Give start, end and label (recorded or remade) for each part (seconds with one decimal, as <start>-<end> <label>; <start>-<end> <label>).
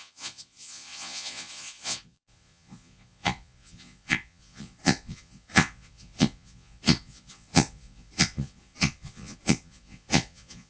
0.0-10.7 remade